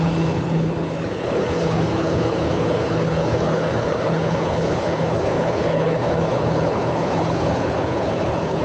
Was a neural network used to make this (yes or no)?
yes